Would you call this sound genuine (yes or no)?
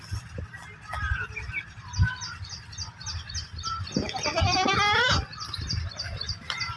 yes